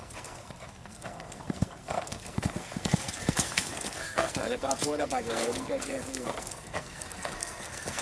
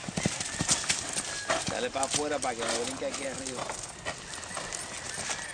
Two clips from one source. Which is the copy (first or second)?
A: first